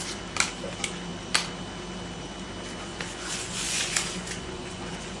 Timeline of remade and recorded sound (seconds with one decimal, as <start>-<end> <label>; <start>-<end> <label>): 0.0-2.9 recorded; 2.9-5.2 remade